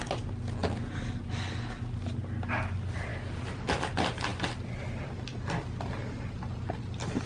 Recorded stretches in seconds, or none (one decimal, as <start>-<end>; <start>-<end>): 0.0-7.3

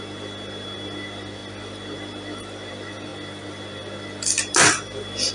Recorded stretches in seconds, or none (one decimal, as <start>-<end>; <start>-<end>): 0.0-5.3